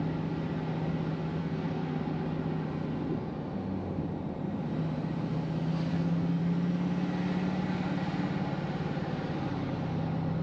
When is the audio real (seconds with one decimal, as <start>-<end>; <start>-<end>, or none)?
0.0-1.4; 2.0-5.9; 6.4-10.4